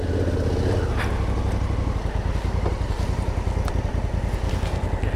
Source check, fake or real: real